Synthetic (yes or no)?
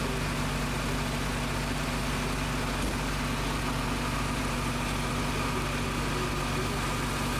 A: no